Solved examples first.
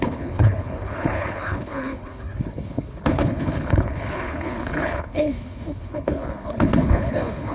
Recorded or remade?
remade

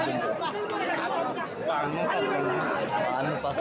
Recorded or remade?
recorded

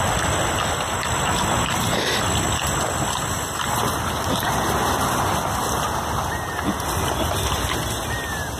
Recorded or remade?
recorded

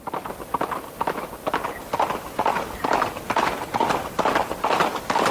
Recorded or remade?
recorded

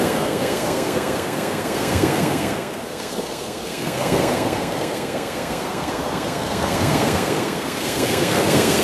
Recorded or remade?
remade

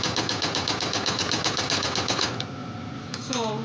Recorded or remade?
recorded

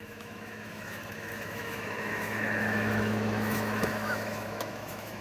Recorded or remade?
remade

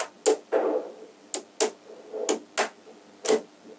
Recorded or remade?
recorded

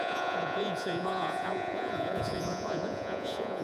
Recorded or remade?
remade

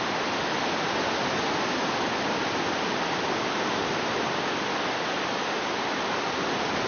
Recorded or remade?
recorded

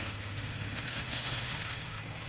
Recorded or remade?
remade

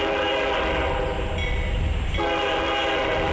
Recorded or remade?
recorded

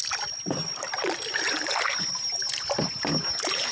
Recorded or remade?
recorded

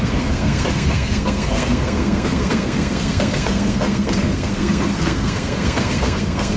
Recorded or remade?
remade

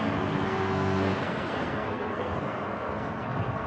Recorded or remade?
remade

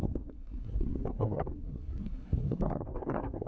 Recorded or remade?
remade